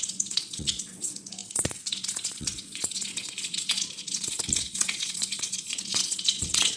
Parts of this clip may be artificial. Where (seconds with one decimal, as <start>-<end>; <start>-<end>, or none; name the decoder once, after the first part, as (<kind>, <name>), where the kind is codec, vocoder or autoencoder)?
0.0-6.8 (vocoder, Vocos)